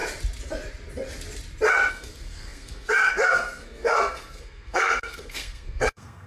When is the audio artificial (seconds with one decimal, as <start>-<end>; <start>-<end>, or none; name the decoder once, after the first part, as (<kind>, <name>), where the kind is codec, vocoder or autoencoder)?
1.9-6.3 (codec, SNAC)